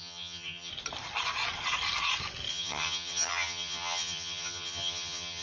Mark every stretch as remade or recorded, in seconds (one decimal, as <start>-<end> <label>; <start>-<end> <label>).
0.0-0.7 remade; 0.7-2.5 recorded; 2.5-5.4 remade